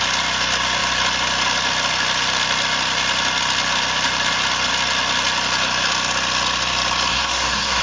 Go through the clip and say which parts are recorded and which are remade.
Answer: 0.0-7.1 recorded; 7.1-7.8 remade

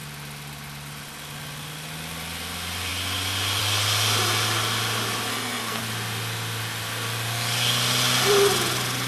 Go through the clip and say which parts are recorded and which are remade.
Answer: 0.0-5.3 recorded; 5.3-5.8 remade; 5.8-9.1 recorded

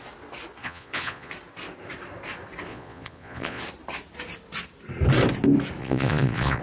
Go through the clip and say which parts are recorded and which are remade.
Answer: 0.0-0.6 recorded; 0.6-1.3 remade; 1.3-2.7 recorded; 2.7-3.6 remade; 3.6-5.8 recorded; 5.8-6.6 remade

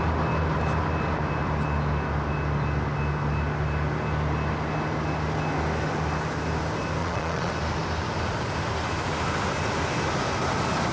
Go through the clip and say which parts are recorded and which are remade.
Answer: 0.0-7.0 recorded; 7.0-7.5 remade; 7.5-10.9 recorded

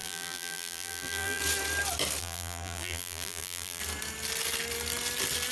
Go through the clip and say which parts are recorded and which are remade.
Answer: 0.0-1.4 remade; 1.4-2.2 recorded; 2.2-3.8 remade; 3.8-5.5 recorded

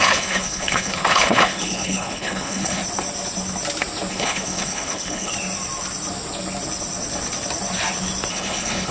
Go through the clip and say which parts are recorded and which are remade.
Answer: 0.0-2.8 remade; 2.8-4.1 recorded; 4.1-5.3 remade; 5.3-8.3 recorded; 8.3-8.9 remade

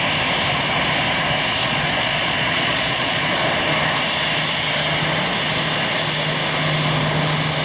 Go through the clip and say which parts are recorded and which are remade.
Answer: 0.0-1.6 recorded; 1.6-3.5 remade; 3.5-7.6 recorded